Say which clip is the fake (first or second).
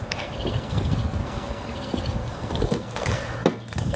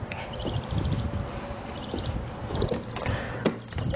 first